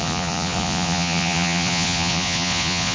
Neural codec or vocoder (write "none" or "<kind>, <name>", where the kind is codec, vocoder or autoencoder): vocoder, Vocos